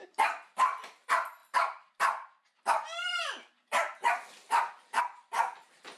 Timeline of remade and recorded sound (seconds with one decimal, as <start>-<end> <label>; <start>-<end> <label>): 0.0-6.0 remade